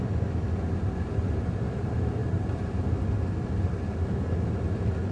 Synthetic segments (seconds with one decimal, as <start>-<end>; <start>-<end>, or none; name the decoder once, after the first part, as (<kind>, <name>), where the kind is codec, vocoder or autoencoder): none